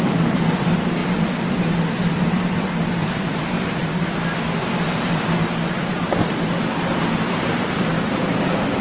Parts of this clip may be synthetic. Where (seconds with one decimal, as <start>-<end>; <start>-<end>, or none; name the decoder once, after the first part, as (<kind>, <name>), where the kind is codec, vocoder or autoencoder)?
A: 0.0-8.8 (vocoder, BigVGAN v2)